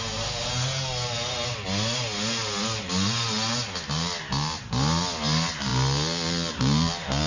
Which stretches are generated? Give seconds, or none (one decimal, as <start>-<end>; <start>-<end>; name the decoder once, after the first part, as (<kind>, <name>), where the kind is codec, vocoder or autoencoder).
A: none